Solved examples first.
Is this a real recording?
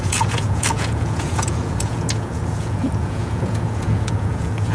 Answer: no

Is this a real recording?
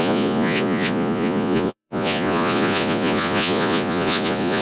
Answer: no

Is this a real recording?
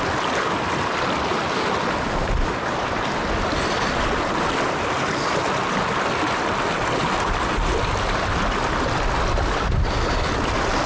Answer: yes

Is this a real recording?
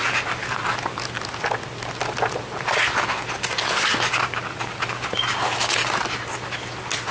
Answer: yes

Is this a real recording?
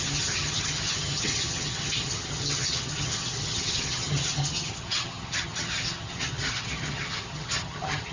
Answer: no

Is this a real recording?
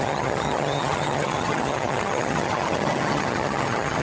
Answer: no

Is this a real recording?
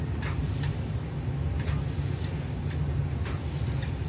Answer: yes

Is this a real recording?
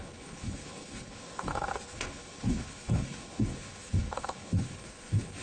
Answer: no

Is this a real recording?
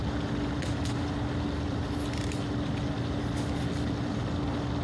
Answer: yes